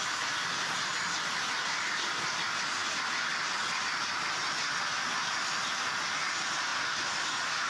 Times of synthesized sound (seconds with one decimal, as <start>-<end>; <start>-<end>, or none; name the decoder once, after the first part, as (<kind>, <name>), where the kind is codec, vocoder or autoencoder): none